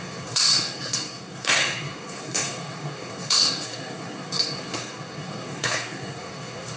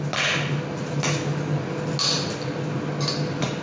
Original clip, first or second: second